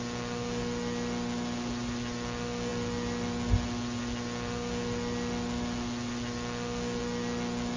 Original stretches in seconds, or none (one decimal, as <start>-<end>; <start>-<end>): 0.0-7.8